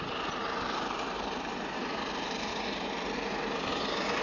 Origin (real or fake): real